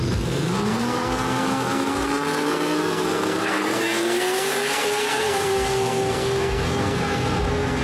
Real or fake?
fake